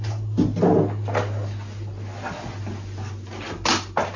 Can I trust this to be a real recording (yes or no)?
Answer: yes